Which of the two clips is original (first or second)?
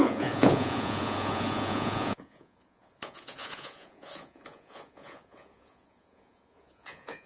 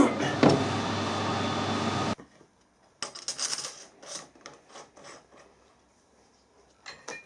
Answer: second